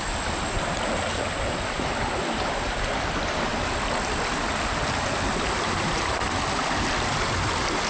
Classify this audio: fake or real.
real